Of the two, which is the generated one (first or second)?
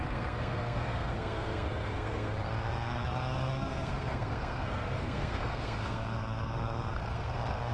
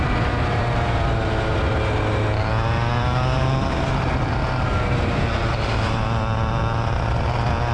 first